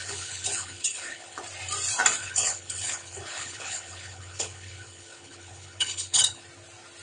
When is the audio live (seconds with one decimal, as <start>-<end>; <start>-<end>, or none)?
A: 1.4-2.2; 6.4-7.0